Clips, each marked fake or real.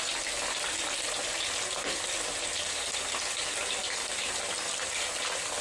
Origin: real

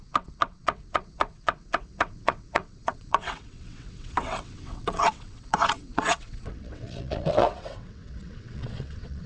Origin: fake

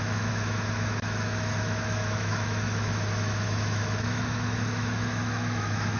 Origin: fake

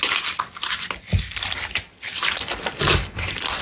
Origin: real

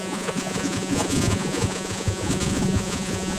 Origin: fake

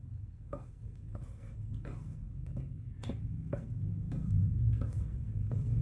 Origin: fake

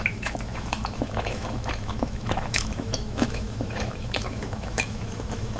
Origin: fake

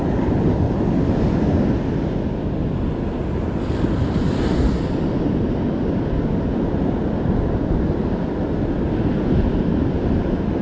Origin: real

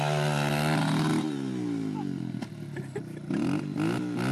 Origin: real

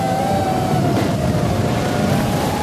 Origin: fake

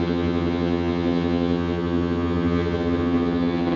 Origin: fake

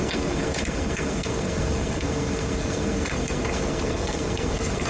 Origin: fake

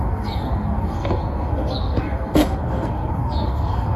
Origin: fake